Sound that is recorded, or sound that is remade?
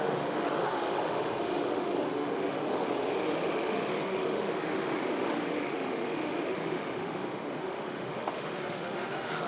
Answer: remade